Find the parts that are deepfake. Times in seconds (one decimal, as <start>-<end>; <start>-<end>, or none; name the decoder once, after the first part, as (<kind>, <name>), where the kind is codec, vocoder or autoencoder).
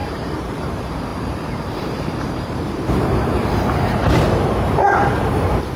0.0-5.8 (vocoder, BigVGAN v2)